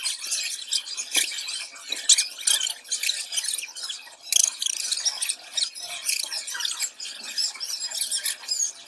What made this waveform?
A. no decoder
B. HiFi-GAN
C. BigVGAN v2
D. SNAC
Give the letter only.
A